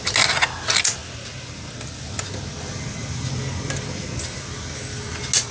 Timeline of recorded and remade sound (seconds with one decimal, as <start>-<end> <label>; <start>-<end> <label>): 0.0-5.5 recorded